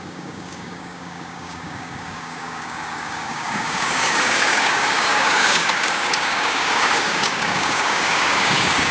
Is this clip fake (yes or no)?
yes